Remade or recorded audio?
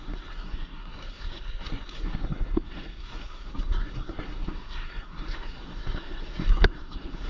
remade